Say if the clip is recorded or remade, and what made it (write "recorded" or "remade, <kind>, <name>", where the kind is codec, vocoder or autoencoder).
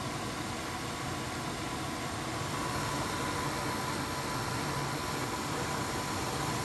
recorded